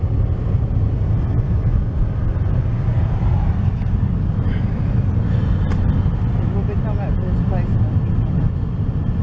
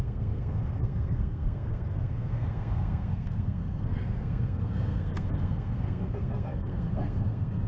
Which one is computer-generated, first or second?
second